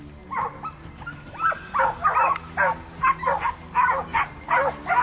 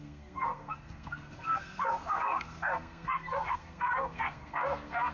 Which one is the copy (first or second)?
second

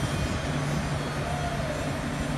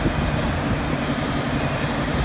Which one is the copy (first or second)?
second